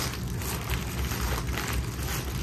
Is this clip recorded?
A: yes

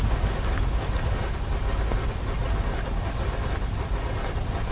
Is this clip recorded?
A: yes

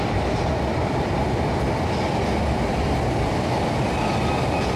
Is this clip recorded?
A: no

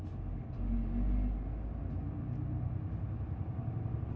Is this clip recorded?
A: yes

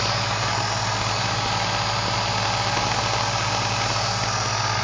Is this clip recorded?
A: yes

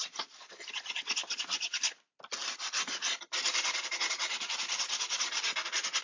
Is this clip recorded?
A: yes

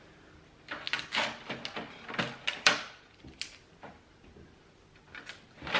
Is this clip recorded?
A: yes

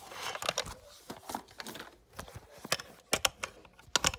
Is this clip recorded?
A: yes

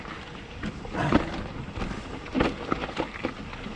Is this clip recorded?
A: yes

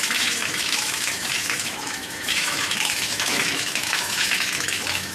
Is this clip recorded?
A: no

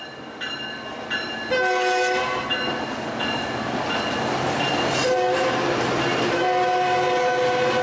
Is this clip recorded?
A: yes